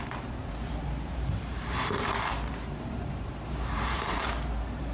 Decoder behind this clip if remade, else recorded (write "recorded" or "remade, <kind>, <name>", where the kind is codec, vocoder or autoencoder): remade, vocoder, BigVGAN v2